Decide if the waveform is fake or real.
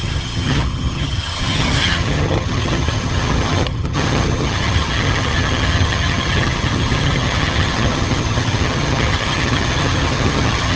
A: fake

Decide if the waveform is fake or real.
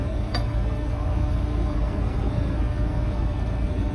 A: fake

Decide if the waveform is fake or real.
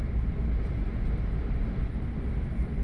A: real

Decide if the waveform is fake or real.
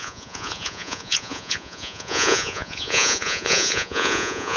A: fake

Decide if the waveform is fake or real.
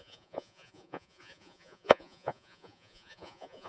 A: fake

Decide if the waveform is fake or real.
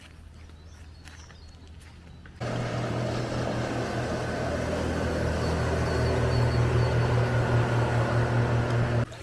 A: real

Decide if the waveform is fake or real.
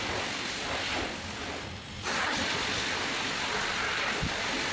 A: real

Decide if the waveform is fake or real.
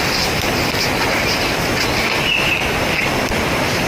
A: real